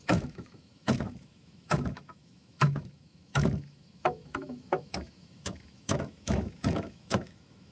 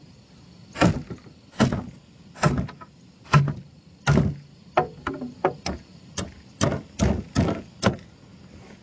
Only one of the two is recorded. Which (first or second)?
second